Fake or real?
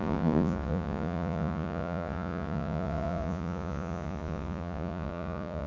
fake